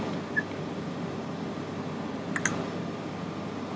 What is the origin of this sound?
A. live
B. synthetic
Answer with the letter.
A